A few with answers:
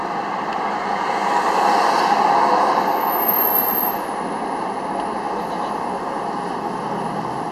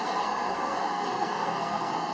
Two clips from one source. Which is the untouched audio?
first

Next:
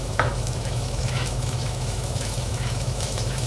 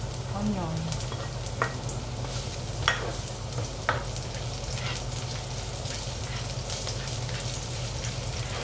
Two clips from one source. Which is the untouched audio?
second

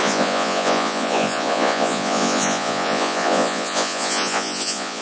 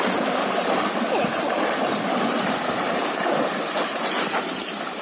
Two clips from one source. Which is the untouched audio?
second